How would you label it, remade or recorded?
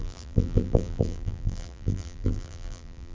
remade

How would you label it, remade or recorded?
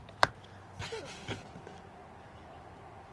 recorded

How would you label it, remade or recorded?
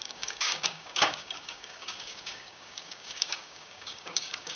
remade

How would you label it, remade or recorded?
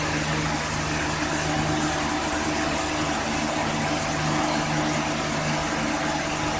recorded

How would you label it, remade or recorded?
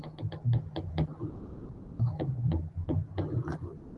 recorded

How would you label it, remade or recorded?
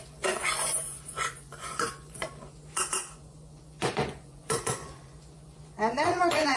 remade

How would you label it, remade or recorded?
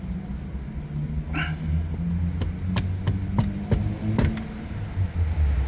recorded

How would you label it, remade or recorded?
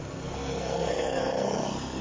remade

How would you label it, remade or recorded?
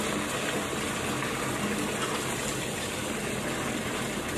recorded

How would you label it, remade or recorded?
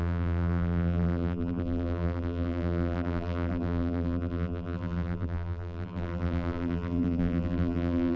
remade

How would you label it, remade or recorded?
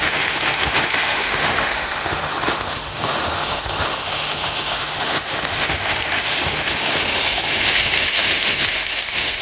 remade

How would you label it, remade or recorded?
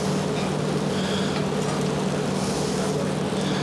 recorded